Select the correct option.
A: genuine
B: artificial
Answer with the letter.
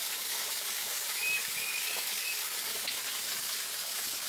B